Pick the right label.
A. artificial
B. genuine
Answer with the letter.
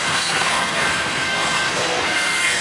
A